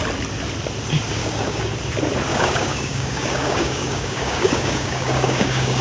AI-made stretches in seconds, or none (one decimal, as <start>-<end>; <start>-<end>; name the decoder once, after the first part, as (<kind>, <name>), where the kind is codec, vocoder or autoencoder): 1.2-1.7 (codec, DAC); 2.3-5.8